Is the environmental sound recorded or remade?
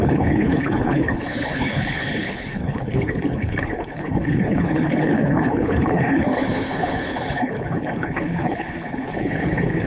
remade